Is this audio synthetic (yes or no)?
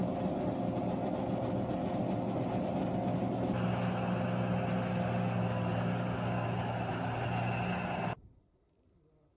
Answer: no